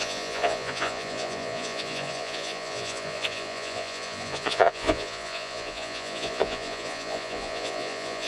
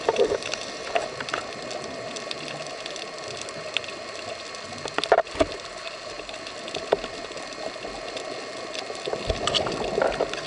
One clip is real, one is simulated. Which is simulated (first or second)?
first